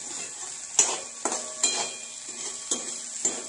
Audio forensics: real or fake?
real